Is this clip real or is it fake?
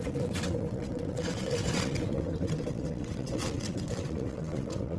fake